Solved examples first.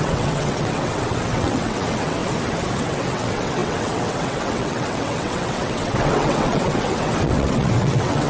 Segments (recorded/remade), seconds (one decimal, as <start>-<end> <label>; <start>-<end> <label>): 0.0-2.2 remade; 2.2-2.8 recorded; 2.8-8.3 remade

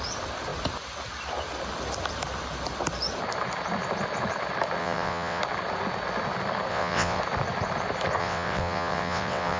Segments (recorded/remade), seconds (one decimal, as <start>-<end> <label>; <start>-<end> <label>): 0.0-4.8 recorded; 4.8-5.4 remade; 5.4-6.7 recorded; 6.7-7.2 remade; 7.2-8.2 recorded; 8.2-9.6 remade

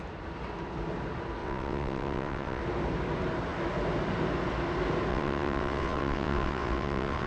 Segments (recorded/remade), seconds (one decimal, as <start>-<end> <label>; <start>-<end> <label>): 0.0-1.4 recorded; 1.4-2.6 remade; 2.6-5.1 recorded; 5.1-7.3 remade

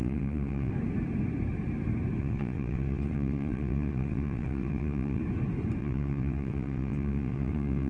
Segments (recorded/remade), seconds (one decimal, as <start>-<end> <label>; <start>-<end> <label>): 0.0-0.7 remade; 0.7-2.2 recorded; 2.2-5.2 remade; 5.2-5.8 recorded; 5.8-7.9 remade